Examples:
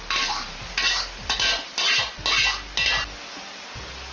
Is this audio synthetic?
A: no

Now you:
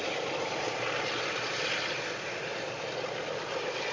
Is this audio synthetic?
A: no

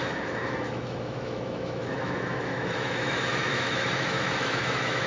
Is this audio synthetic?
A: yes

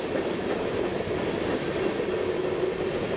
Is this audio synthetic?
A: no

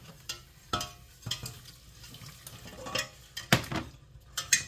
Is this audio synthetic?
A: no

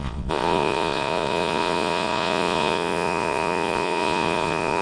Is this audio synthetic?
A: yes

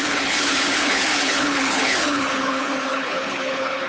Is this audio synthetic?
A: yes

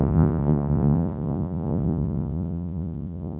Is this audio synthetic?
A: yes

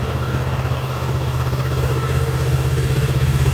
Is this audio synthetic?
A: yes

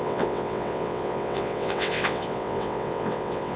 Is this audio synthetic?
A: yes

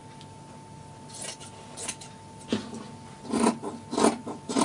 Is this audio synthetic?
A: no